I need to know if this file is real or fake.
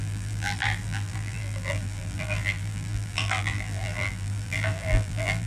fake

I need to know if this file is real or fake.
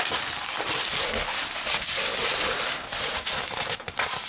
real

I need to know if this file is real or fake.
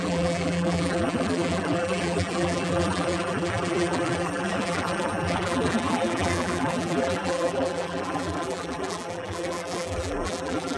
fake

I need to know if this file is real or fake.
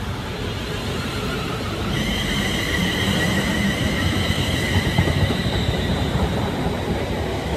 fake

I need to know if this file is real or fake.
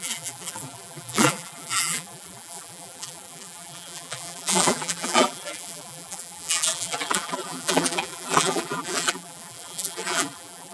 fake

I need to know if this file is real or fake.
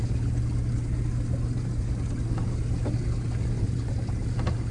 real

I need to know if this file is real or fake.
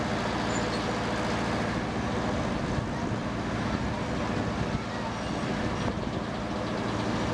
real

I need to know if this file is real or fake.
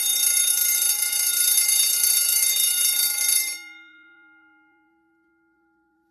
fake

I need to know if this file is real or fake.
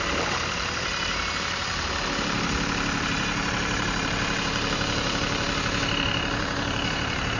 fake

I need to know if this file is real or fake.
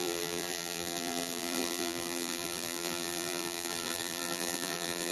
fake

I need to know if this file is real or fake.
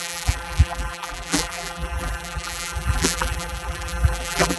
fake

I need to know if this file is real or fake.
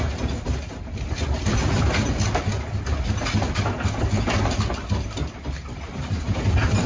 real